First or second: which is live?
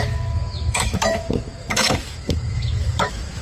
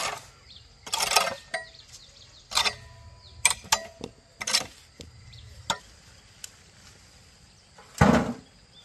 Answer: second